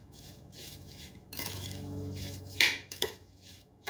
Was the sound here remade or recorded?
remade